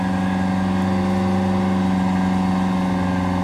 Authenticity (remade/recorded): recorded